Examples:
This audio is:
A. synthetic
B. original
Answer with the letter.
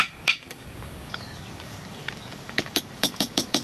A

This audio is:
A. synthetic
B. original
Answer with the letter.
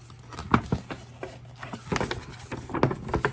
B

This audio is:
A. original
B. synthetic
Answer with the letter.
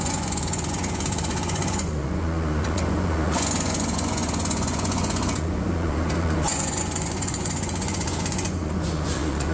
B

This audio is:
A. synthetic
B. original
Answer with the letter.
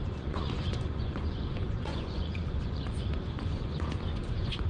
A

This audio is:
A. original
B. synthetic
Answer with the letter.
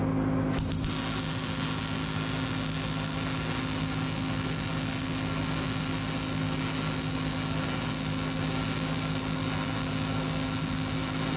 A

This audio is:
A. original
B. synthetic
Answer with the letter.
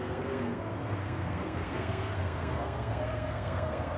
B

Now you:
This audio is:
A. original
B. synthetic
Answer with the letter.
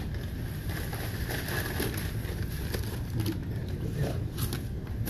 A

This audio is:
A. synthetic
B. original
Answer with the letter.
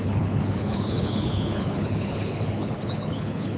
A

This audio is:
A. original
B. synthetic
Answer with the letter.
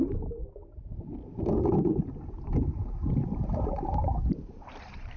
A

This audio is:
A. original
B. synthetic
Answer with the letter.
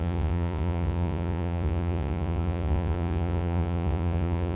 B